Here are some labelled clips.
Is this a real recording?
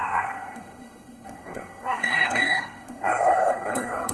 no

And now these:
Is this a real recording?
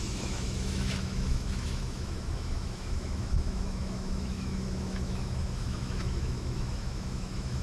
no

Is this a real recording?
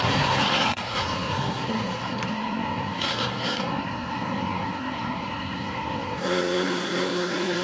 no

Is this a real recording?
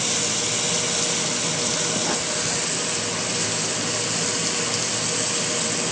yes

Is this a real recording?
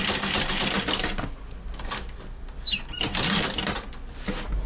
yes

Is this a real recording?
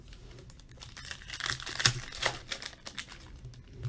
yes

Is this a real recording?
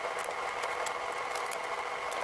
yes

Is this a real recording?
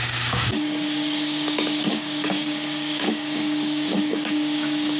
no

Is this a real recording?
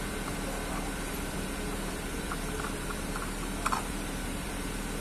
no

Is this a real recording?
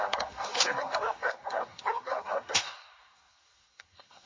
no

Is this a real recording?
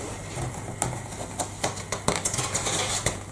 yes